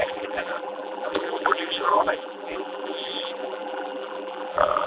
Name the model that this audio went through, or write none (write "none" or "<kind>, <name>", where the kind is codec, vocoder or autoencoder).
vocoder, BigVGAN v2